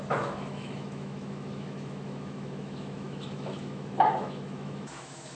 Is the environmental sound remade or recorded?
remade